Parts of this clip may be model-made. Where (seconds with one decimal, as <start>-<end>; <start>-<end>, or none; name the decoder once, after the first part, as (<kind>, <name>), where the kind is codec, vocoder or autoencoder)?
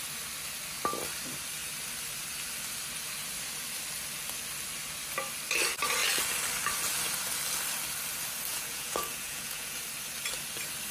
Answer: 8.5-9.8 (vocoder, Vocos)